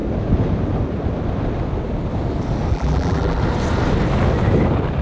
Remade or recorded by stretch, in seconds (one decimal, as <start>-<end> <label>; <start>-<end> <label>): 0.0-2.7 recorded; 2.7-3.4 remade; 3.4-5.0 recorded